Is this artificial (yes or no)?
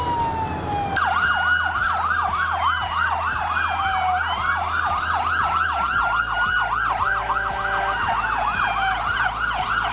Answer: no